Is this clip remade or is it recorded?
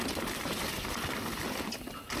recorded